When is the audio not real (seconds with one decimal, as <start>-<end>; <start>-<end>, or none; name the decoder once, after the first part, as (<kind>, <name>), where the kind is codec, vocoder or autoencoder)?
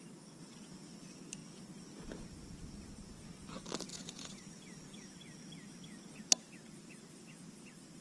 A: 3.9-5.1 (vocoder, Vocos)